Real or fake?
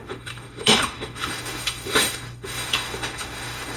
fake